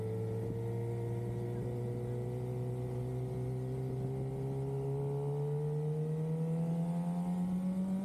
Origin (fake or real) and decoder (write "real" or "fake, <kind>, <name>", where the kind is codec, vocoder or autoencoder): real